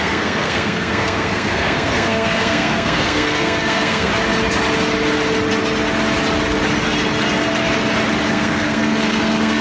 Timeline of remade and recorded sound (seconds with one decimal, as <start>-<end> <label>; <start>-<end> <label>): 0.0-4.1 remade; 4.1-8.3 recorded; 8.3-9.6 remade